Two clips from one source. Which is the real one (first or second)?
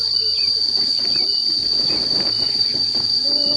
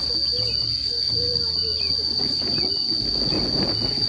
second